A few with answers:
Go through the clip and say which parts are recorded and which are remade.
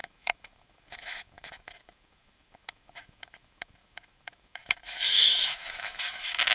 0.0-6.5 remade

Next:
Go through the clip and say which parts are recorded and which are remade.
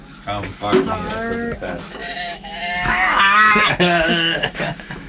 0.0-2.0 recorded; 2.0-5.1 remade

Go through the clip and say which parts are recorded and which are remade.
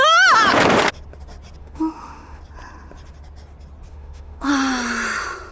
0.0-1.6 recorded; 1.6-2.4 remade; 2.4-3.9 recorded; 3.9-4.5 remade; 4.5-5.5 recorded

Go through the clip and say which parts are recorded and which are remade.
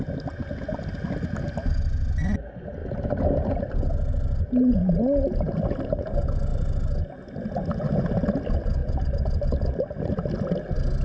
0.0-11.0 recorded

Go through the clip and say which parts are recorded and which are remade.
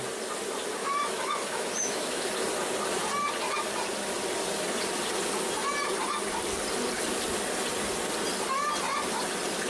0.0-0.8 recorded; 0.8-2.3 remade; 2.3-9.7 recorded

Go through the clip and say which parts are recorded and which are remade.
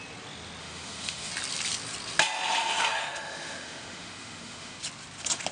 0.0-0.6 recorded; 0.6-1.3 remade; 1.3-3.0 recorded; 3.0-4.8 remade; 4.8-5.5 recorded